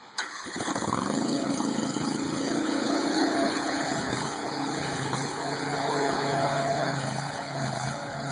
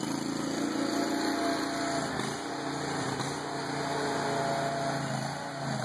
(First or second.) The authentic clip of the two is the second